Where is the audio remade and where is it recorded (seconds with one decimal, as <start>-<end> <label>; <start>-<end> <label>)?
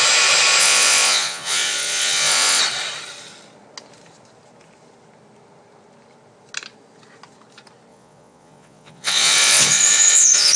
0.0-0.6 recorded; 0.6-2.6 remade; 2.6-7.9 recorded; 7.9-10.6 remade